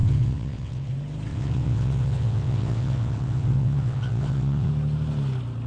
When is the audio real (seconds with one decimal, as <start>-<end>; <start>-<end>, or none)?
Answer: 0.9-1.3; 4.7-5.7